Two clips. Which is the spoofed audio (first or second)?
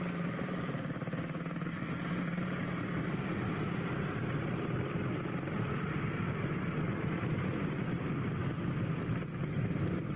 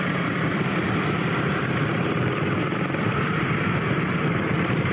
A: second